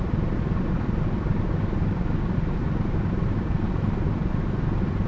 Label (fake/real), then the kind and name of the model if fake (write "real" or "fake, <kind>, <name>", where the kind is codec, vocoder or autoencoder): real